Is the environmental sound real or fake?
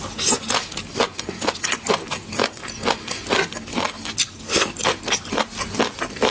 real